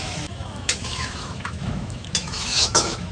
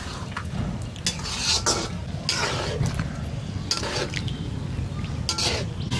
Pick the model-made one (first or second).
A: first